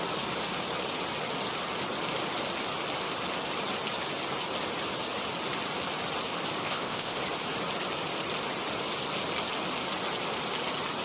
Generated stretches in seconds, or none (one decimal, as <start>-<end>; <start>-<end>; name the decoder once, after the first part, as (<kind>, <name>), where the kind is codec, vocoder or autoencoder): 6.6-7.2 (codec, ZipCodec)